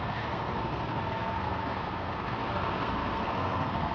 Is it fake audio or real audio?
fake